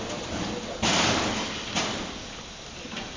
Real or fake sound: real